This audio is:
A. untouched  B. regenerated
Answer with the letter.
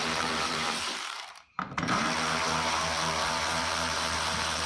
B